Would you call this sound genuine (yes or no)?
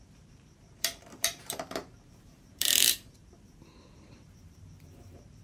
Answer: no